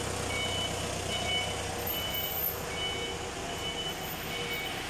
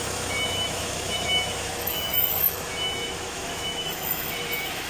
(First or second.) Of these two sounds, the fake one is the second